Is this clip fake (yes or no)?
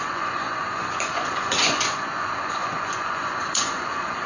yes